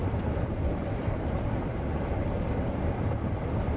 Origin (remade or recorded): remade